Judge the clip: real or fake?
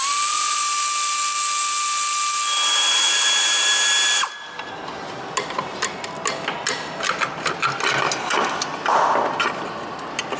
real